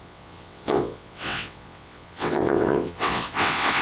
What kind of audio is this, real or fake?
fake